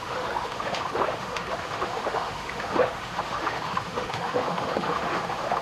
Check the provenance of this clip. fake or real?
fake